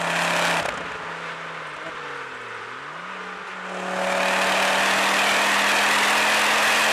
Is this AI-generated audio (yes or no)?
no